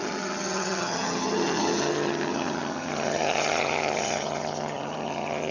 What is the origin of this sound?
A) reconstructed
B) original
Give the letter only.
A